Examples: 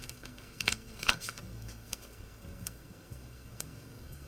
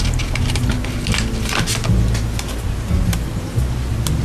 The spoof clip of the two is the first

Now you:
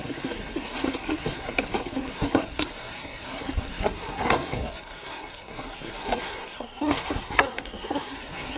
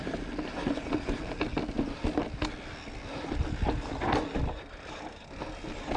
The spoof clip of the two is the first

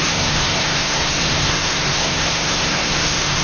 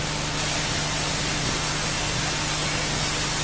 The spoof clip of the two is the first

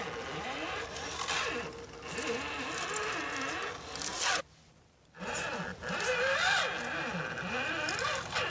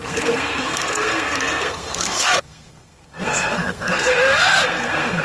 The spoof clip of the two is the second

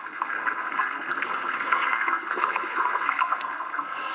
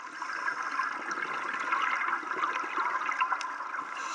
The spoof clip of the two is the first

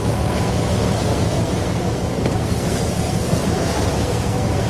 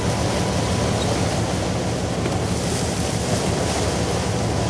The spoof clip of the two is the first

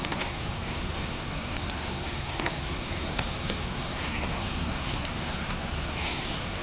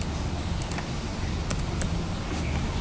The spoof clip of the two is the first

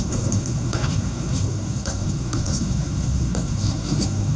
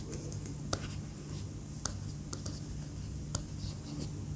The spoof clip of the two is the first